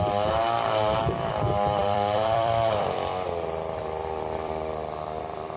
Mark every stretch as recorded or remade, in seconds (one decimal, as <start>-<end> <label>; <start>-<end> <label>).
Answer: 0.0-1.8 recorded; 1.8-5.6 remade